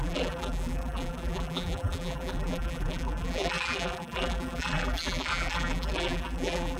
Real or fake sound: fake